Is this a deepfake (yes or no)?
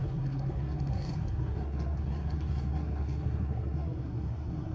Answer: yes